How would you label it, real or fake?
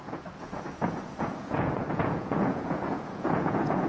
fake